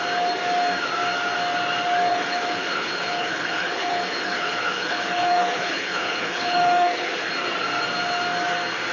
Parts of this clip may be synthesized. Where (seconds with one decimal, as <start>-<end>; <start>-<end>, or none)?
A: 2.1-7.3